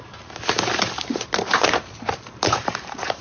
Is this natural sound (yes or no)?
no